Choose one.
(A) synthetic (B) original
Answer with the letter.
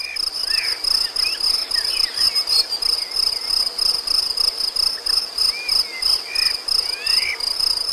B